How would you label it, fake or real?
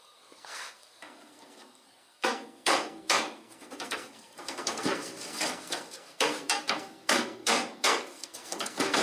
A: fake